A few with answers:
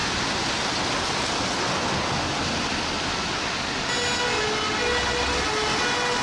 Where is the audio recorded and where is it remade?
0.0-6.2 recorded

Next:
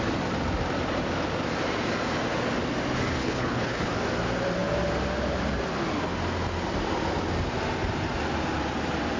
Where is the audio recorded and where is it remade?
0.0-3.2 recorded; 3.2-3.9 remade; 3.9-9.2 recorded

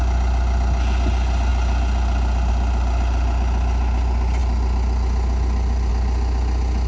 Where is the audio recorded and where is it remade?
0.0-6.9 recorded

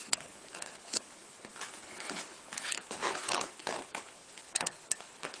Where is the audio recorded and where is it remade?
0.0-5.4 remade

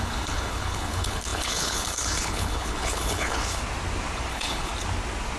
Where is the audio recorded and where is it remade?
0.0-3.6 remade; 3.6-4.3 recorded; 4.3-4.7 remade; 4.7-5.4 recorded

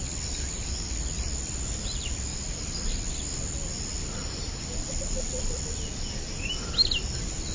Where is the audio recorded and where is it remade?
0.0-7.5 recorded